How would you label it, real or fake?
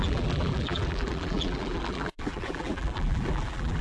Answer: fake